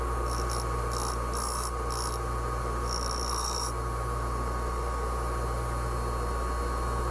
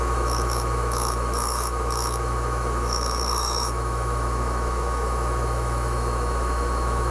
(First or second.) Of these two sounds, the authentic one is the first